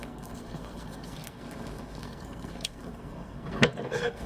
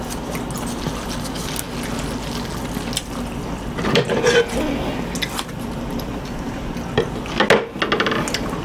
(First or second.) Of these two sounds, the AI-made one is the first